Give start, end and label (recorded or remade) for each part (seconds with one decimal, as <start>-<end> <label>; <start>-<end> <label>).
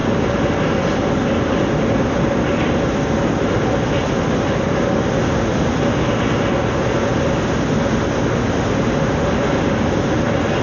0.0-10.6 recorded